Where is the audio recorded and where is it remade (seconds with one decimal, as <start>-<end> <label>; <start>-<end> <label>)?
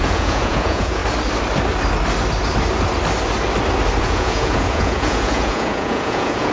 0.0-1.0 remade; 1.0-4.0 recorded; 4.0-6.5 remade